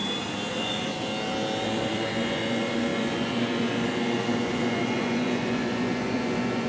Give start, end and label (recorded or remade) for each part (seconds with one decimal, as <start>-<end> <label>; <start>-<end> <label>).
0.0-0.5 recorded; 0.5-0.9 remade; 0.9-1.6 recorded; 1.6-6.7 remade